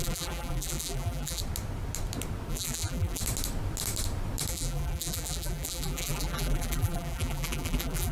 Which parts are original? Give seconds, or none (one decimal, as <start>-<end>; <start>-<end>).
1.4-2.5; 3.2-4.5